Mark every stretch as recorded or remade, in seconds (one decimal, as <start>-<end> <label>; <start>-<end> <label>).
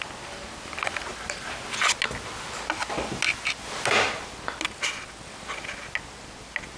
0.0-6.8 recorded